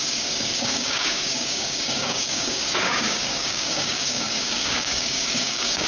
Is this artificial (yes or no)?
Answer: yes